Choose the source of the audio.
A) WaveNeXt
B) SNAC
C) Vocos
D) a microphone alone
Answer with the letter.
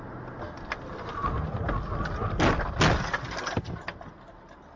D